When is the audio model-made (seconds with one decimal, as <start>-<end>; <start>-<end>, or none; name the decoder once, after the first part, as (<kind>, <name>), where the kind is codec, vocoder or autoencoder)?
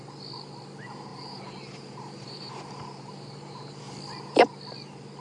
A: 1.1-3.1 (vocoder, BigVGAN v2)